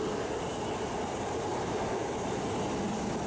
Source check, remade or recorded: recorded